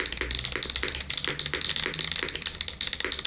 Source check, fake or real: real